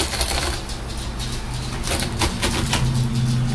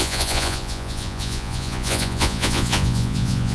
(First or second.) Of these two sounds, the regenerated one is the second